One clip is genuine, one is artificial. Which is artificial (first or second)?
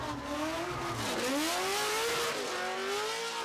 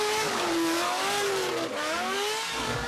second